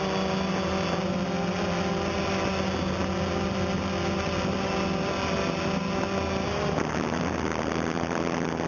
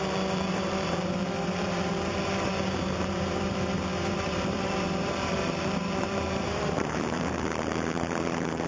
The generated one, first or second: second